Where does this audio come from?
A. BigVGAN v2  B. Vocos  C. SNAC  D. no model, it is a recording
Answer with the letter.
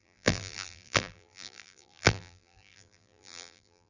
A